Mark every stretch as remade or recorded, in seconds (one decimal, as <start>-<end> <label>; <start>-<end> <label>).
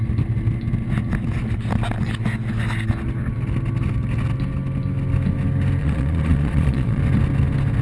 0.0-5.8 recorded; 5.8-7.0 remade; 7.0-7.8 recorded